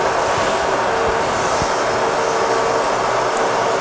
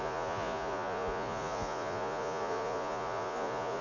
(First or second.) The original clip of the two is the first